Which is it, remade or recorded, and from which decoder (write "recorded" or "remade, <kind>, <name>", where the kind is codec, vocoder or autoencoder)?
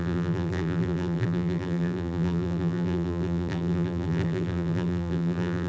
remade, vocoder, BigVGAN v2